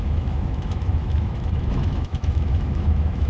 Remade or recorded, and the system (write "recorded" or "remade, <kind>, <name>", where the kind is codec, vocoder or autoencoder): remade, autoencoder, DAC-VAE